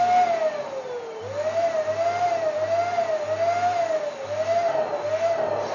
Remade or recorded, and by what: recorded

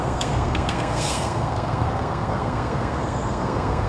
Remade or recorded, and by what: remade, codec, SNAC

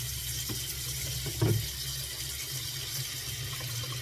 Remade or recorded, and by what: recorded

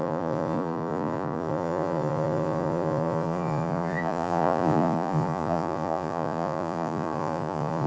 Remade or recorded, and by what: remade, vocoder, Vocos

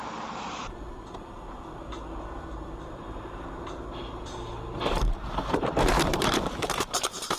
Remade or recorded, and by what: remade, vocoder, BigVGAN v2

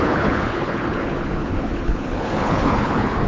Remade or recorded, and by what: remade, codec, HILCodec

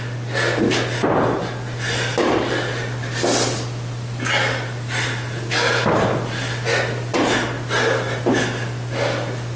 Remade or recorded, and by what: recorded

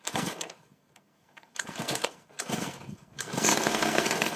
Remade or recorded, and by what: remade, codec, SNAC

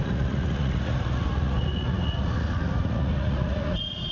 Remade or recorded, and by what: remade, vocoder, Vocos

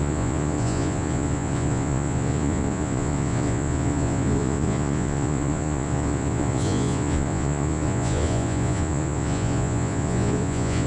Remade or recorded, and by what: remade, vocoder, Vocos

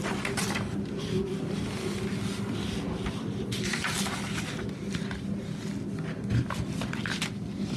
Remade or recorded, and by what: recorded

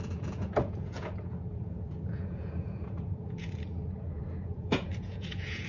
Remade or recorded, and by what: remade, vocoder, Vocos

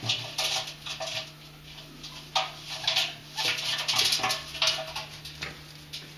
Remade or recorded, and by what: recorded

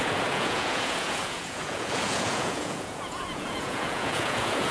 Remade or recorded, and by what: remade, vocoder, Vocos